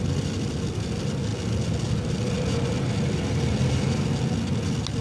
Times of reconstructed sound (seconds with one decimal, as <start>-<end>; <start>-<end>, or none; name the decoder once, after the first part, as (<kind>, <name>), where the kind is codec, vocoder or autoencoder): none